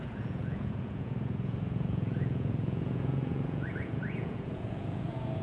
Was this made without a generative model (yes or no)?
no